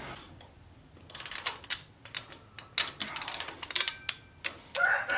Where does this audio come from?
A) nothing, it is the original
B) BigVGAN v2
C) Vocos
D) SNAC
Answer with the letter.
A